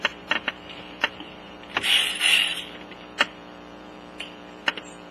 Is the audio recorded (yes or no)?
no